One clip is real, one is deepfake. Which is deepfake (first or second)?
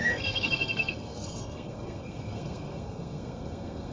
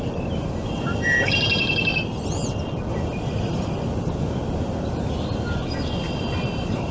first